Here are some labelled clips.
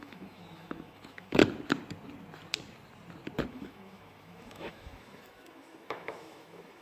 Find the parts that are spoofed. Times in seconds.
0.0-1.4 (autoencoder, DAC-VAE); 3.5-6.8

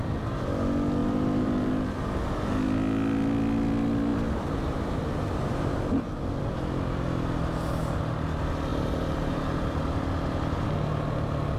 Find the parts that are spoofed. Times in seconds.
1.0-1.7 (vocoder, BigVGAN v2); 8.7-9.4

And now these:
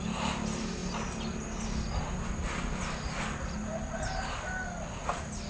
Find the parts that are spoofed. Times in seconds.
none

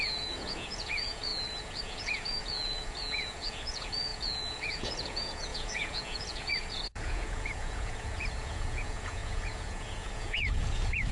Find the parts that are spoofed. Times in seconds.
0.0-11.1 (vocoder, Vocos)

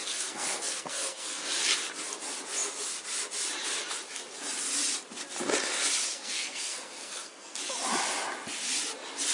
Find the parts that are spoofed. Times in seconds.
0.0-1.6 (codec, SNAC); 6.1-7.6

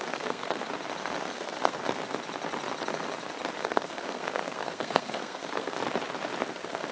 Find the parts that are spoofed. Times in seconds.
0.0-0.6 (codec, SNAC); 1.2-1.8; 3.6-5.8; 6.4-6.9

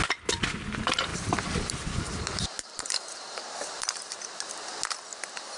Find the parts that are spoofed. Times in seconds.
1.1-4.5 (vocoder, BigVGAN v2)

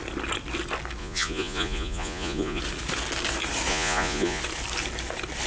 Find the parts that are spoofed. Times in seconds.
1.0-2.6 (vocoder, Vocos); 3.7-4.4